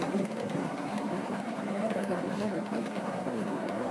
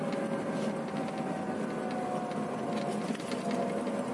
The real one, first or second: second